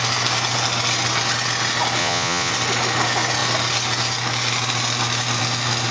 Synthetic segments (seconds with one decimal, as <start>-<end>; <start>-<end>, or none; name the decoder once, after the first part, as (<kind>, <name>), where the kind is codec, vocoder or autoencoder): 2.0-2.5 (vocoder, Vocos)